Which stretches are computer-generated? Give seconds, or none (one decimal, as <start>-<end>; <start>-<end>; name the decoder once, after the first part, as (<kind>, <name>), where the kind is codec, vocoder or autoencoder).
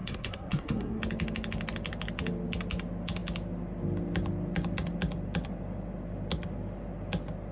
0.0-1.0 (codec, SNAC)